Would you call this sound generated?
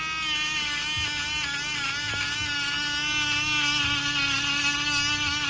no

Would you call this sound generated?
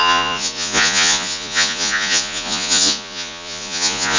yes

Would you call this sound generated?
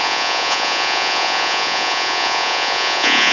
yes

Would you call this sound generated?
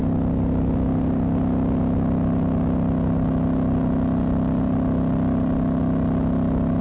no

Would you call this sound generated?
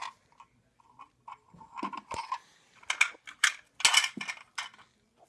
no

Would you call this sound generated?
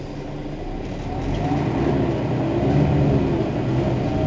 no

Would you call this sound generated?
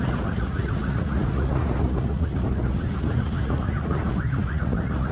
yes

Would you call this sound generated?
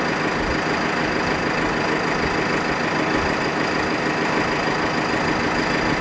no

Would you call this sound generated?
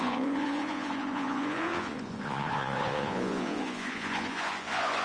yes